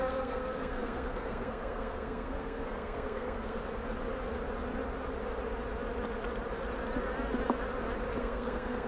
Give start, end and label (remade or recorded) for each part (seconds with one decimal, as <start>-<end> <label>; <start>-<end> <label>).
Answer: 0.0-3.6 remade; 3.6-8.2 recorded; 8.2-8.9 remade

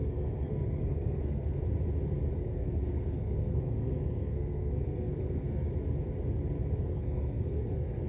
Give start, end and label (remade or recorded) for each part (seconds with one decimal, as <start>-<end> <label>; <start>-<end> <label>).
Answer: 0.0-1.6 remade; 1.6-2.4 recorded; 2.4-5.7 remade; 5.7-6.8 recorded; 6.8-8.1 remade

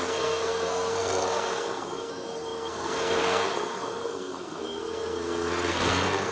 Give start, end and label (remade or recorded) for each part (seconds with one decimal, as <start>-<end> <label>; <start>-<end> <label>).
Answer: 0.0-6.3 remade

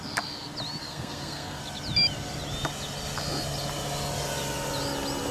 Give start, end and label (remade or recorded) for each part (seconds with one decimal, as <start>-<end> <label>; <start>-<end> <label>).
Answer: 0.0-0.8 recorded; 0.8-1.6 remade; 1.6-5.3 recorded

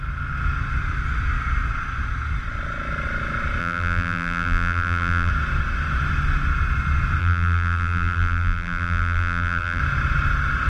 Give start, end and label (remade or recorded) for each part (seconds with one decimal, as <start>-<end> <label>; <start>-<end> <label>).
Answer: 0.0-3.6 recorded; 3.6-5.3 remade; 5.3-7.2 recorded; 7.2-9.8 remade; 9.8-10.7 recorded

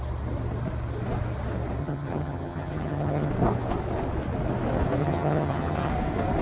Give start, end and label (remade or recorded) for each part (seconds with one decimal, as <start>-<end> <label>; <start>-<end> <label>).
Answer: 0.0-1.8 recorded; 1.8-3.3 remade; 3.3-5.0 recorded; 5.0-5.9 remade; 5.9-6.4 recorded

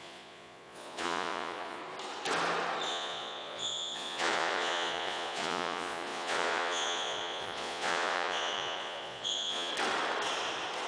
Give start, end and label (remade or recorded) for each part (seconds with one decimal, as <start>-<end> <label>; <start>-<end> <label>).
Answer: 0.0-1.8 remade; 1.8-2.9 recorded; 2.9-9.7 remade; 9.7-10.9 recorded